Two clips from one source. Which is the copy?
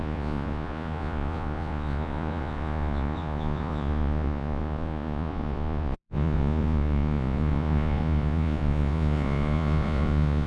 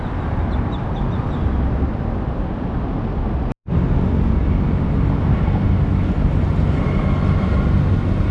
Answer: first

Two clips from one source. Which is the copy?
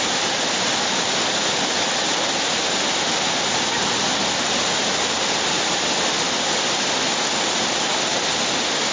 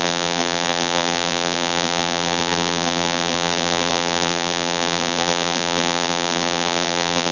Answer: second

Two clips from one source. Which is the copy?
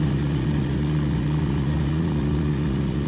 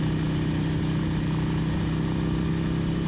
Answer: first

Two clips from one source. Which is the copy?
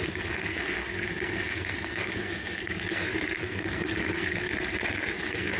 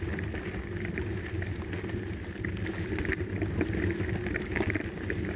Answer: first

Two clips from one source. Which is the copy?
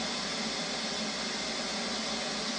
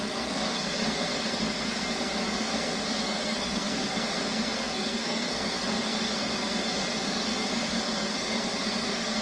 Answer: second